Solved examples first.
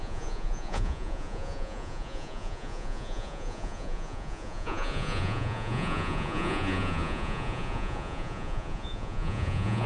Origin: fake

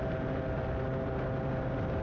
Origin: real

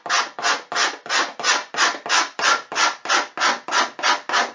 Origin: real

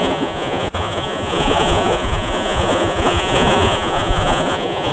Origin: fake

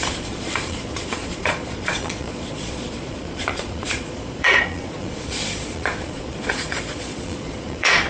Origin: fake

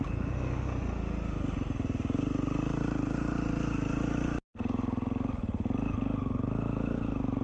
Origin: real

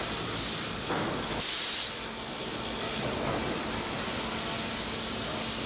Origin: real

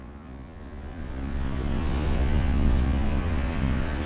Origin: fake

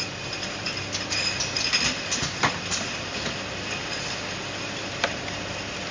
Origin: real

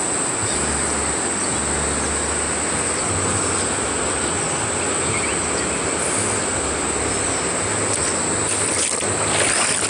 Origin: real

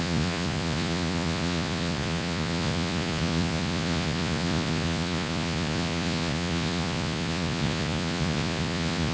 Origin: fake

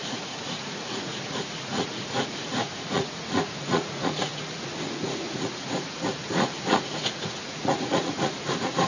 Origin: fake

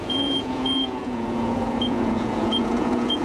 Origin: fake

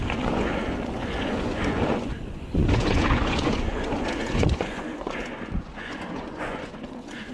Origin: fake